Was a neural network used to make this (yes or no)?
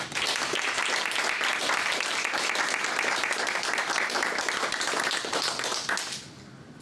no